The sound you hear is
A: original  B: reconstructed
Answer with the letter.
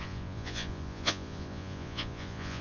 B